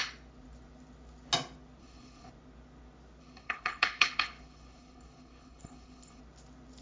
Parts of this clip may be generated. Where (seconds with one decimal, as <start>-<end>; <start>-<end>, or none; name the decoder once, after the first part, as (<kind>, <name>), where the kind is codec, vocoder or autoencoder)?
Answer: 1.8-2.3 (codec, HILCodec); 3.2-6.2

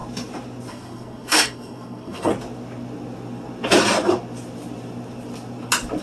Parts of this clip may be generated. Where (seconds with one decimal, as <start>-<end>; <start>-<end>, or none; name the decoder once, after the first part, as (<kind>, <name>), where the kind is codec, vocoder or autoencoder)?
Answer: 0.7-2.3 (codec, SNAC)

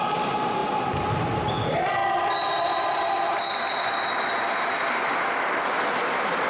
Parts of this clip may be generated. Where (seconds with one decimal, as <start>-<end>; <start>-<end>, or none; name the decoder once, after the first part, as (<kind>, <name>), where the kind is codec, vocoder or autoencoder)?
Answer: none

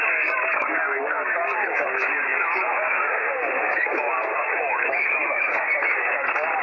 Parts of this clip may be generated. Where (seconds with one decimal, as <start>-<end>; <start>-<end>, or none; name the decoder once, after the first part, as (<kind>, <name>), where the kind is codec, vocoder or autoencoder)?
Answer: 0.0-6.6 (codec, DAC)

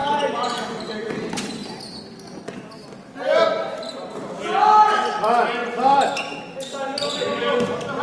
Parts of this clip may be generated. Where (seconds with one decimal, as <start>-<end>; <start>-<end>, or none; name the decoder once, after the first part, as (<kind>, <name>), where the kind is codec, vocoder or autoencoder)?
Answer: 0.0-0.8 (vocoder, Vocos)

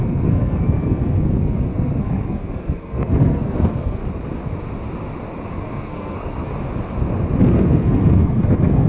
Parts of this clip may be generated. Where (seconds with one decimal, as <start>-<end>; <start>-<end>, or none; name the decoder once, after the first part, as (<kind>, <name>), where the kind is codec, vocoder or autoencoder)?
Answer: 0.0-4.0 (codec, SNAC); 5.5-6.5; 7.5-8.9

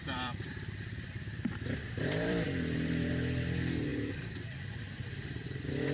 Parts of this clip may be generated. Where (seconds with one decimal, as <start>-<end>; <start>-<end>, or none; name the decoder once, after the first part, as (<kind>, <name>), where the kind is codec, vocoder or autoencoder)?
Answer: 0.0-3.1 (vocoder, BigVGAN v2); 3.9-4.6